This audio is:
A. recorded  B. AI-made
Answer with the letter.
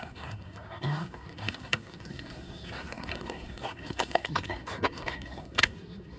B